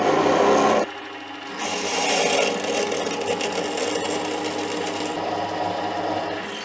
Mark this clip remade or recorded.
recorded